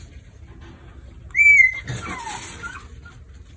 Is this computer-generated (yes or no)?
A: no